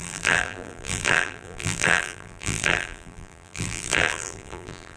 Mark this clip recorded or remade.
remade